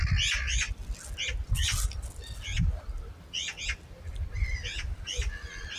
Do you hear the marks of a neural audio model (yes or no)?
no